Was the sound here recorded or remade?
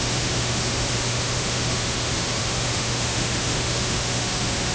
remade